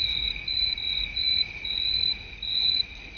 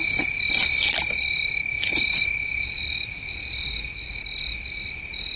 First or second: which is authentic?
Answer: second